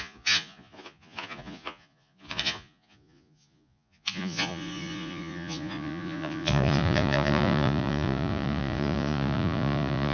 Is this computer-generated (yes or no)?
yes